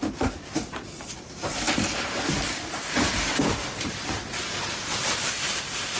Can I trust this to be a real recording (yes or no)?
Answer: no